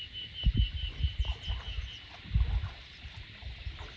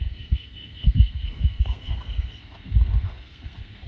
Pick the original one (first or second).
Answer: first